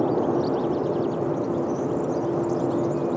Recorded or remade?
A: recorded